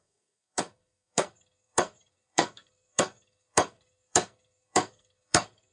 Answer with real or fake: fake